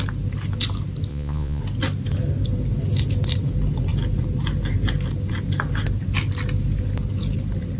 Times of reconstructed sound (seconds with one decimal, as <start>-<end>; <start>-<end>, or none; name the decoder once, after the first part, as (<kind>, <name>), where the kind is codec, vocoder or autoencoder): 1.1-1.6 (vocoder, Vocos)